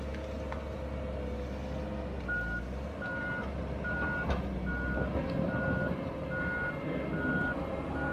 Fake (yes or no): no